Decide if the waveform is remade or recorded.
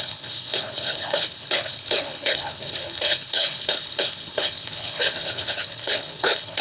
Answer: remade